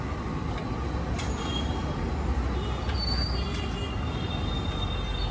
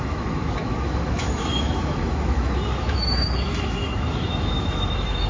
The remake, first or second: second